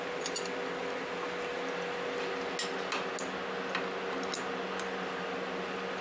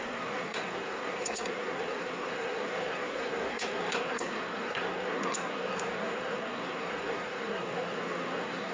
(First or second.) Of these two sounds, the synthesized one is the second